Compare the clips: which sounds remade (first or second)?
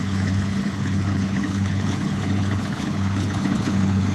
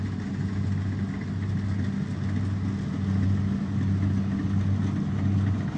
first